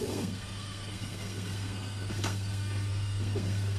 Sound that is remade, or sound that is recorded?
remade